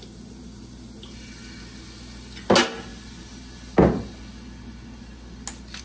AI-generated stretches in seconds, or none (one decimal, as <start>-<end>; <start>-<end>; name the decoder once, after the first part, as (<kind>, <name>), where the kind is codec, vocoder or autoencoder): none